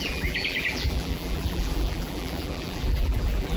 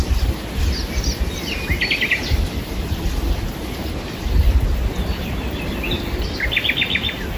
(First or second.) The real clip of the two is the second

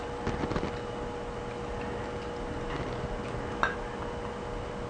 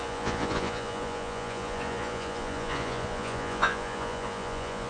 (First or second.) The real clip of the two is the first